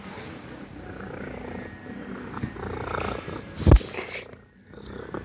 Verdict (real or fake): real